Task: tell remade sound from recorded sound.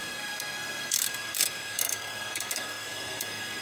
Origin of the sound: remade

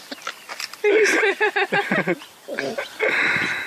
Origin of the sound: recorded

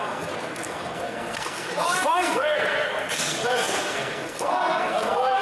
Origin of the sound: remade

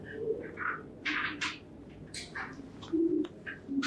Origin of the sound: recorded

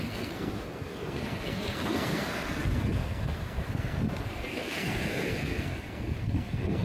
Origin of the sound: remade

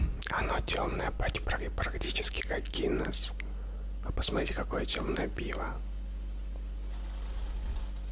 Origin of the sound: recorded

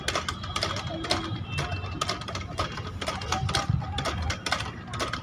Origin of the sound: recorded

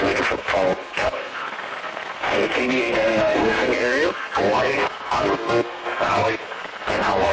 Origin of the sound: remade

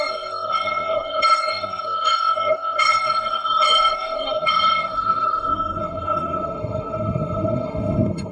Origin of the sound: remade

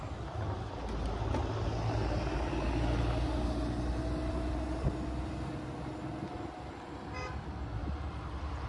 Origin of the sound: recorded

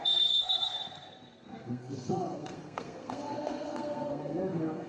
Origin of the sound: remade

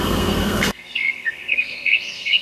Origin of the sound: remade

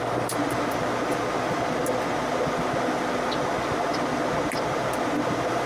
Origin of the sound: recorded